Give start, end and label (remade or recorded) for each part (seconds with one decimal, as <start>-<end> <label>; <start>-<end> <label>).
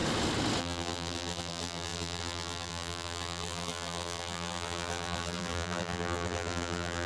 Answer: 0.0-0.6 recorded; 0.6-7.1 remade